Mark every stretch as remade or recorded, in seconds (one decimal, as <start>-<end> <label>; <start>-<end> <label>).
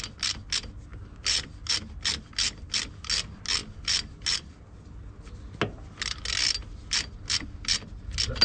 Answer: 0.0-8.4 recorded